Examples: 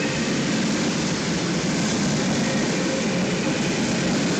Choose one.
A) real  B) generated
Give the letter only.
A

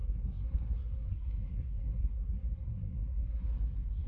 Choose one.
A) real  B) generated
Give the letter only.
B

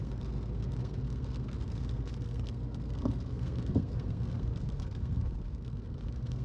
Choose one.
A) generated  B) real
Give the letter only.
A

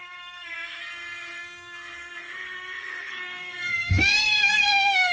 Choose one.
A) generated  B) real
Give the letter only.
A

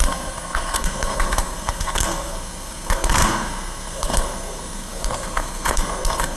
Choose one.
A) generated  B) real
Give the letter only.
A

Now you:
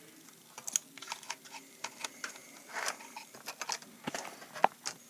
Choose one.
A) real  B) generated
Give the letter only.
A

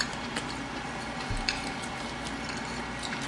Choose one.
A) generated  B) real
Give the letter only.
B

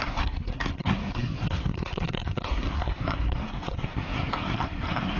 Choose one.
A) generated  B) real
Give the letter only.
A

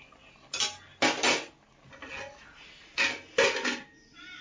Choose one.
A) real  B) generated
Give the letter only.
A